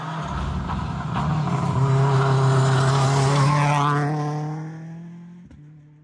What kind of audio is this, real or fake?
real